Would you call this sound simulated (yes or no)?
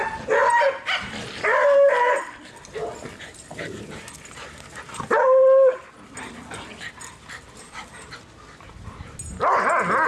no